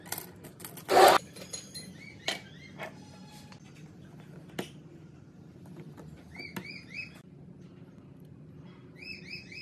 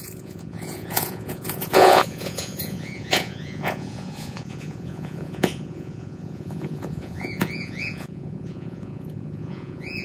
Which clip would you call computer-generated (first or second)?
second